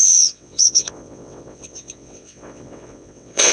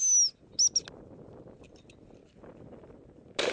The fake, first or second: first